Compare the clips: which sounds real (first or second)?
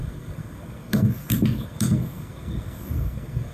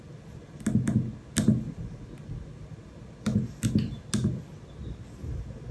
second